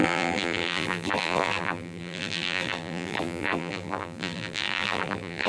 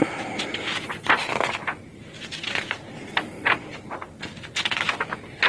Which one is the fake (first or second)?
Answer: first